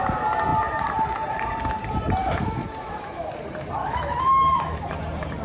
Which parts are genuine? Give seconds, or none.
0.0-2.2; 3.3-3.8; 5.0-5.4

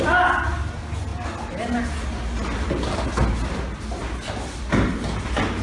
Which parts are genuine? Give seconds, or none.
0.0-5.6

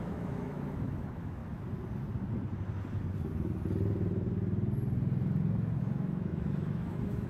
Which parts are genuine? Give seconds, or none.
1.4-5.8